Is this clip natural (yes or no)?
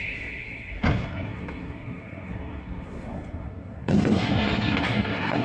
no